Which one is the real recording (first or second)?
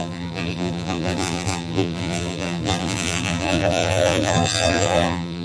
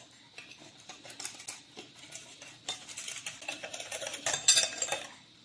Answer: second